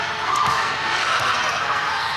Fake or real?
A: fake